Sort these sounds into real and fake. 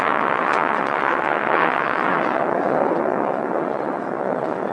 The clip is fake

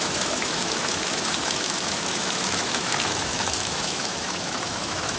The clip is fake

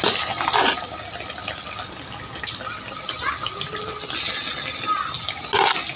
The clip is real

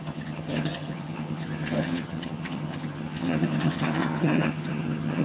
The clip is fake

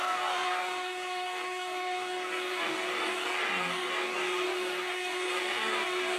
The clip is fake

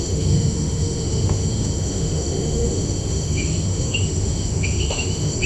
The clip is fake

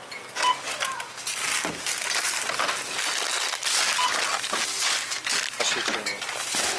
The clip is real